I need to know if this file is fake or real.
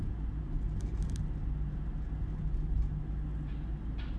real